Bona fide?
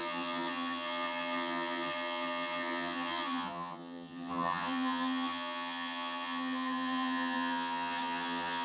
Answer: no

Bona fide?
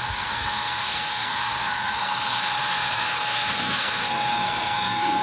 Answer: no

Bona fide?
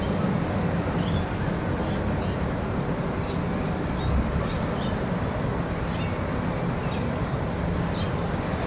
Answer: yes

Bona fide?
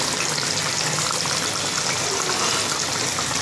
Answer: yes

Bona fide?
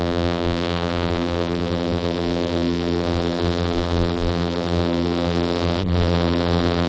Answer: no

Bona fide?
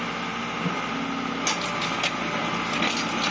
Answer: yes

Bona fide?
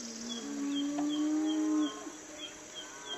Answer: yes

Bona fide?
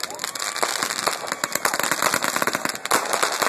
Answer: yes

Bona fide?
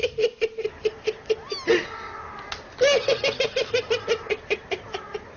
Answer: yes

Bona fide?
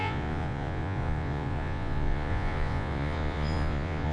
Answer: no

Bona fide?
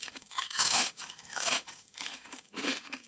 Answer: no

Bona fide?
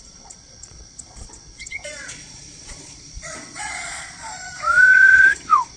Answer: no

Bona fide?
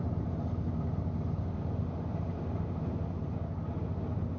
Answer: yes